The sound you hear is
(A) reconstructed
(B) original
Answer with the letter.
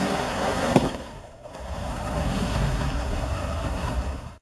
A